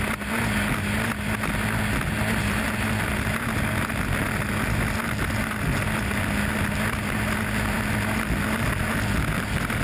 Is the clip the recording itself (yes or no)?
yes